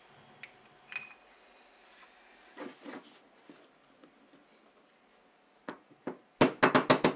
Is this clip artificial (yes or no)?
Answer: no